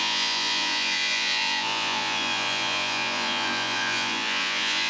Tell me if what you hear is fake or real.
fake